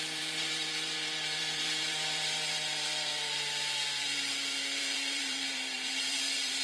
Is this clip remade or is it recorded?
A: remade